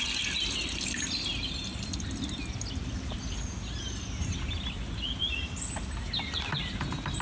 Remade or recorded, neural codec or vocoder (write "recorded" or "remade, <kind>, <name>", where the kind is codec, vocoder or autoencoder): recorded